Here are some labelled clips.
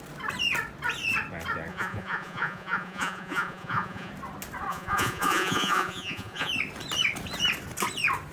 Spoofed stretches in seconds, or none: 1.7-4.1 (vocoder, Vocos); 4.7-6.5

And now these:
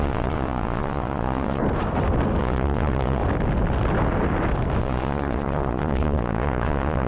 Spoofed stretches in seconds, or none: 0.0-1.6 (vocoder, Vocos); 2.4-3.2; 4.8-7.1